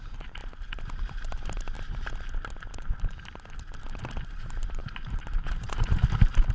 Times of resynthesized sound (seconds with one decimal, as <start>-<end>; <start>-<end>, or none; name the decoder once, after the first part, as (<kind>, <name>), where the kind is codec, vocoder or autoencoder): 0.0-0.4 (vocoder, BigVGAN v2); 4.3-6.5